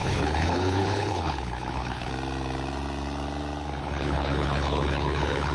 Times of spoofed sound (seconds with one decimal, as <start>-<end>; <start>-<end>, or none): 0.0-2.1; 3.8-5.5